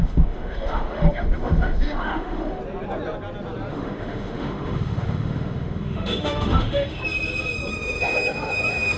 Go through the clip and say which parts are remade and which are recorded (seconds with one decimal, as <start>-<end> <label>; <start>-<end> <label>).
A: 0.0-2.6 remade; 2.6-3.7 recorded; 3.7-7.0 remade; 7.0-7.7 recorded; 7.7-9.0 remade